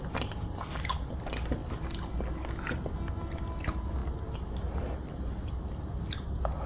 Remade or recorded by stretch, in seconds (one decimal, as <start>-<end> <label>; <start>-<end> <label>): 0.0-6.7 recorded